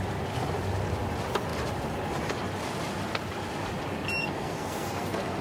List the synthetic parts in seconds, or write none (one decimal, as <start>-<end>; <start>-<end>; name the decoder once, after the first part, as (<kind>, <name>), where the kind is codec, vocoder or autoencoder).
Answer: 4.2-5.4 (codec, SNAC)